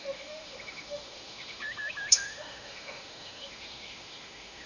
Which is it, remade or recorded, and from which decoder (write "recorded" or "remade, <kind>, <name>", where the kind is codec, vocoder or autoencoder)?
remade, autoencoder, DAC-VAE